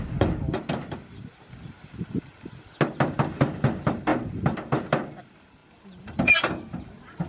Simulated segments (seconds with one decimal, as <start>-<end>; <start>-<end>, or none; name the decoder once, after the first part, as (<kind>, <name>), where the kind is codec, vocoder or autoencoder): none